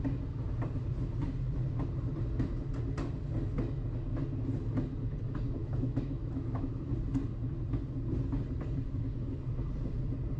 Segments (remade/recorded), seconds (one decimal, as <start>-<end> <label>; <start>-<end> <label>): 0.0-5.6 recorded; 5.6-6.9 remade; 6.9-10.4 recorded